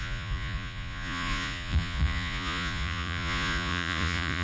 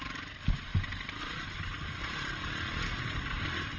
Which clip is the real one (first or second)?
second